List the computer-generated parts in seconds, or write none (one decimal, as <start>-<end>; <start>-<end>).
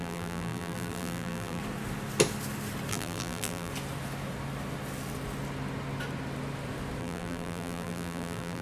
0.0-1.6; 2.9-3.7; 7.0-8.6